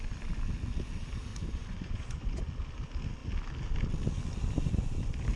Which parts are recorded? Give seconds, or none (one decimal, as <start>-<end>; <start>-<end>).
0.0-1.3; 2.4-5.4